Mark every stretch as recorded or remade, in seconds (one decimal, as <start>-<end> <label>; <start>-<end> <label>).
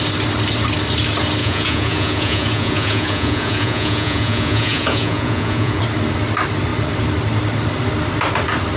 0.0-1.4 recorded; 1.4-5.8 remade; 5.8-8.8 recorded